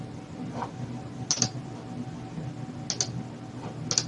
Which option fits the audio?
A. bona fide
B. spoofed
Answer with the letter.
A